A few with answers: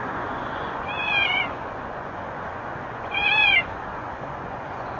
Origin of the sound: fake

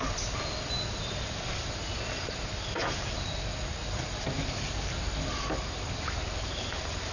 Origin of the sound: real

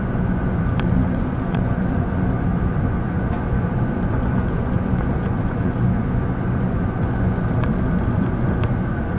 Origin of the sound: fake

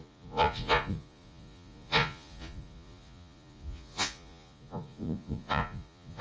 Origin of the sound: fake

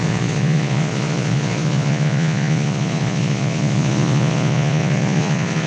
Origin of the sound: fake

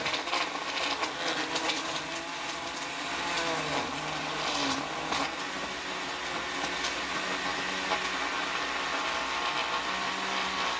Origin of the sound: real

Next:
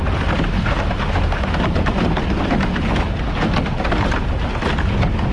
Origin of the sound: real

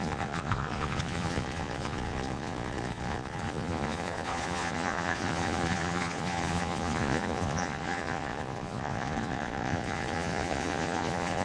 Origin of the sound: fake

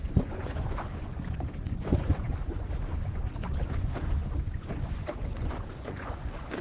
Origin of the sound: fake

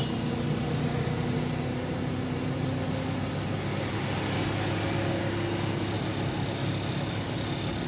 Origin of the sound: real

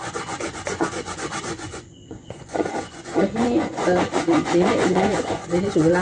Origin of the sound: fake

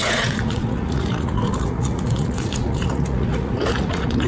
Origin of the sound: fake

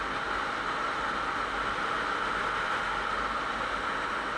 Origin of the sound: real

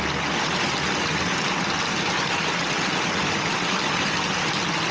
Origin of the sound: real